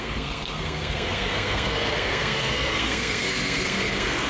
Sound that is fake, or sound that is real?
fake